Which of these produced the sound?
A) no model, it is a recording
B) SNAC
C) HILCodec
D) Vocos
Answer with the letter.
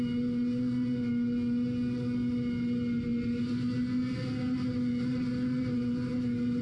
A